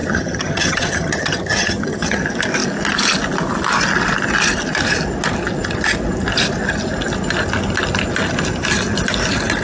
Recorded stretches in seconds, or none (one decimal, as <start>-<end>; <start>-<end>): 2.2-9.6